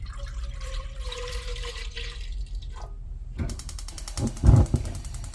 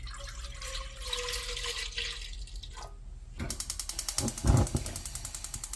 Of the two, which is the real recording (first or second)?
second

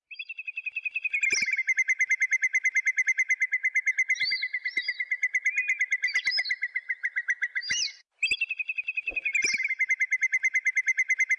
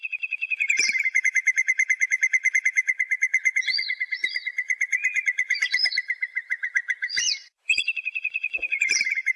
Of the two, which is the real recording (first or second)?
first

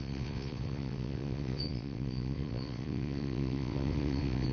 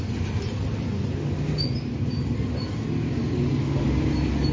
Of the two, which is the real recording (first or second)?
second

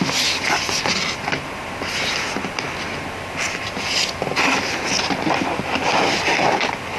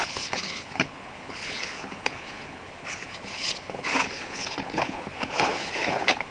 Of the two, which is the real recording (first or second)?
first